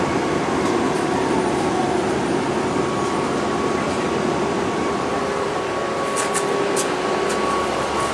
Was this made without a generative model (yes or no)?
yes